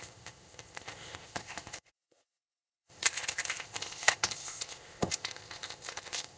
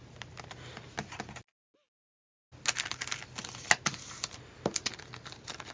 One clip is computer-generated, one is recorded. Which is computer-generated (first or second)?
first